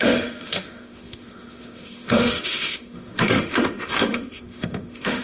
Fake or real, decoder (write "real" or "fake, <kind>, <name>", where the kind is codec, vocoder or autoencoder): fake, autoencoder, DAC-VAE